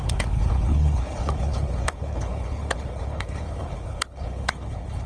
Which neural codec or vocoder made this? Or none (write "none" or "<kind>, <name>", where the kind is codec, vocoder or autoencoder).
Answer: codec, HILCodec